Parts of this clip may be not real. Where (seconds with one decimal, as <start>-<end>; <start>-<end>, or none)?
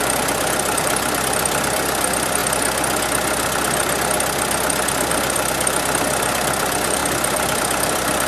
0.0-2.4; 5.1-8.3